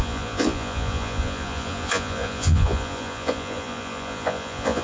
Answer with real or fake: fake